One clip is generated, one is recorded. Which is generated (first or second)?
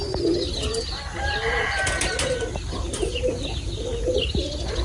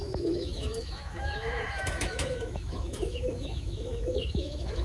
second